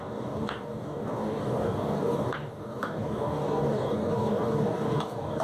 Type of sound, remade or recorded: remade